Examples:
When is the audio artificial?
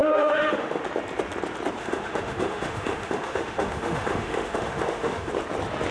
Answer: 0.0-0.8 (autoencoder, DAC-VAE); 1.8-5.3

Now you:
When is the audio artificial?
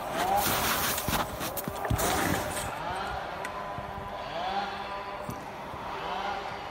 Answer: 5.4-6.0 (autoencoder, DAC-VAE)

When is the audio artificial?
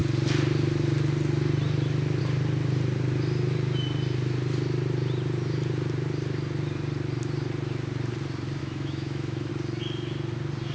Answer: 8.6-9.5 (autoencoder, DAC-VAE)